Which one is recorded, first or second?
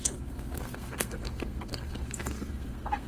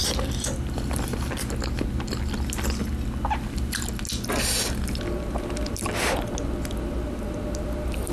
second